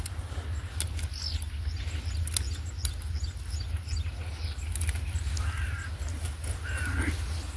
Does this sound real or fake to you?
real